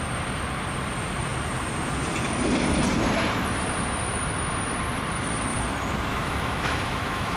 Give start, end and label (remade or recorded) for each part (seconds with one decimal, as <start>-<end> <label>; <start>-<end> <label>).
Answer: 0.0-6.1 recorded; 6.1-7.4 remade